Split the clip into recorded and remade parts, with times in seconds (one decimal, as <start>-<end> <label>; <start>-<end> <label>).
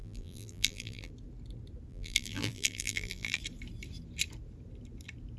0.0-1.1 remade; 1.1-1.9 recorded; 1.9-3.4 remade; 3.4-5.4 recorded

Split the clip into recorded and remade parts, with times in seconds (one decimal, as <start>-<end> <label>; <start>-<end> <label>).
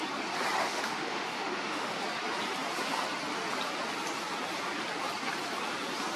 0.0-0.6 recorded; 0.6-2.0 remade; 2.0-6.2 recorded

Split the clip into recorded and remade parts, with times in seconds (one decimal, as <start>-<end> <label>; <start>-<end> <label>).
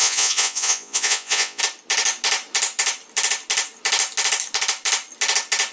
0.0-1.6 remade; 1.6-5.7 recorded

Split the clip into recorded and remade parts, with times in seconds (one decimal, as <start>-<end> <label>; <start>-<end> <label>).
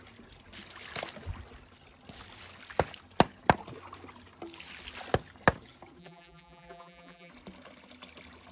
0.0-6.0 recorded; 6.0-7.3 remade; 7.3-8.5 recorded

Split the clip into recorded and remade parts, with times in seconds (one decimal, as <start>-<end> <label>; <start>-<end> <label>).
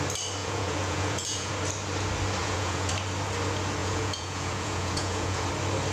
0.0-0.4 recorded; 0.4-1.5 remade; 1.5-2.4 recorded; 2.4-2.9 remade; 2.9-3.8 recorded; 3.8-5.5 remade; 5.5-5.9 recorded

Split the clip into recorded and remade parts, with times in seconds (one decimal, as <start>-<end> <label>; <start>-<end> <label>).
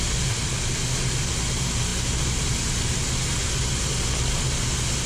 0.0-5.1 recorded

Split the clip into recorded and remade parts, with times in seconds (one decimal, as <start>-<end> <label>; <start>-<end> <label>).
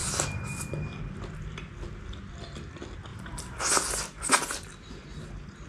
0.0-3.1 recorded; 3.1-3.6 remade; 3.6-5.7 recorded